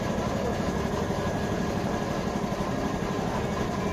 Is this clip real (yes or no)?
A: yes